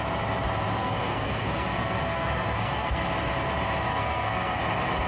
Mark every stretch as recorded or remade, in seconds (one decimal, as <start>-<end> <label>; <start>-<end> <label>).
0.0-0.8 recorded; 0.8-3.1 remade; 3.1-3.9 recorded; 3.9-4.6 remade; 4.6-5.1 recorded